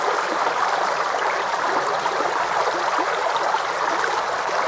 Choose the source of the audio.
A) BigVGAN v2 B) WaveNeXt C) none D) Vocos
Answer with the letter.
C